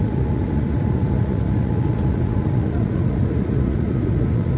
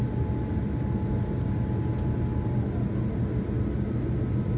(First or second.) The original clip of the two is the second